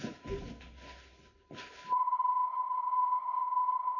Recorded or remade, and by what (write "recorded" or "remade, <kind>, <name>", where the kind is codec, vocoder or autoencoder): remade, codec, HILCodec